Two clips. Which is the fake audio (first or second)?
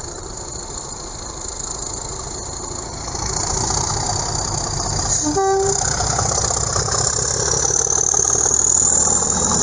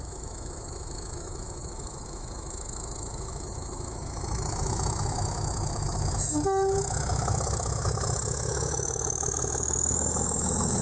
second